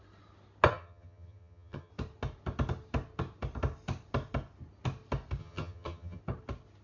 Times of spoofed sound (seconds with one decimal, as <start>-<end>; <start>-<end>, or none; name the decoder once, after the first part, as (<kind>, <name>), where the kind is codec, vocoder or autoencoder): 0.7-1.9 (vocoder, HiFi-GAN); 5.4-6.2